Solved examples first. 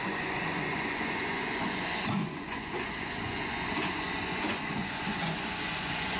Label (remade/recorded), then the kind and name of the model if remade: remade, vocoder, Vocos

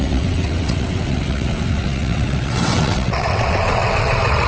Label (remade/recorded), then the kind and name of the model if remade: remade, vocoder, WaveNeXt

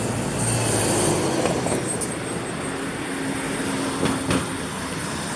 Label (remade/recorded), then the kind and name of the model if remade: recorded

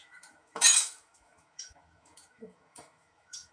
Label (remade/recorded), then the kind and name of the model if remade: remade, autoencoder, DAC-VAE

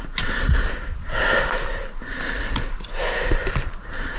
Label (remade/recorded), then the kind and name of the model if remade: recorded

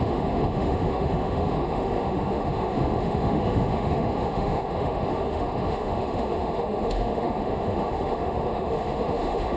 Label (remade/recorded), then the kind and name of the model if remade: remade, autoencoder, DAC-VAE